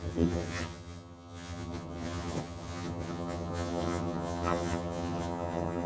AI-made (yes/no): yes